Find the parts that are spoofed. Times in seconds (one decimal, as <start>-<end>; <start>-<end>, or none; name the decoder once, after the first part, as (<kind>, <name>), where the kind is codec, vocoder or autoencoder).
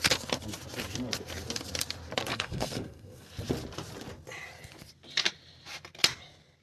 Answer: 2.3-3.3 (codec, SNAC)